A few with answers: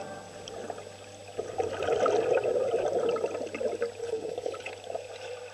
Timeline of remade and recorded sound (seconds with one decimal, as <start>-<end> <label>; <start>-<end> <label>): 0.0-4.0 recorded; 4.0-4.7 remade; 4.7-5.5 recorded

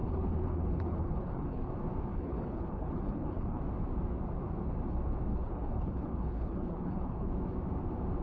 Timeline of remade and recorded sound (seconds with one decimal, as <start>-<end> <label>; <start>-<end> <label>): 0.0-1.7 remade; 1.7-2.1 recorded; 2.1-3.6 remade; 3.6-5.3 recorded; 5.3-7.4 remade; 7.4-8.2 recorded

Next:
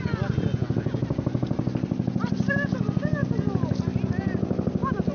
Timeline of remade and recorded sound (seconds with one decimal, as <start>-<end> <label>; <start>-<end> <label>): 0.0-5.1 recorded

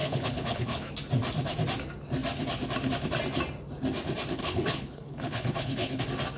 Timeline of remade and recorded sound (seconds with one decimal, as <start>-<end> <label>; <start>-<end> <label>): 0.0-0.9 remade; 0.9-4.4 recorded; 4.4-6.0 remade; 6.0-6.4 recorded